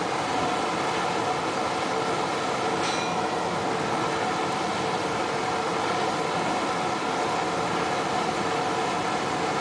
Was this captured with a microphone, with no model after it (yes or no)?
yes